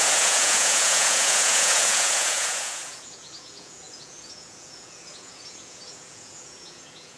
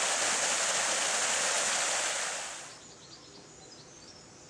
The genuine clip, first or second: second